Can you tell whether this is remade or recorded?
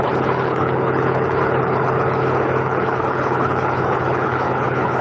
remade